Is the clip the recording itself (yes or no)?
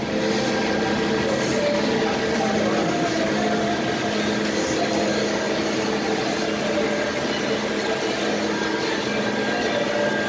yes